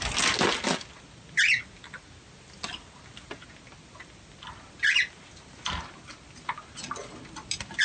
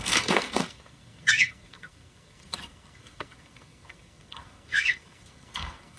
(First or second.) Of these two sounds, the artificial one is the second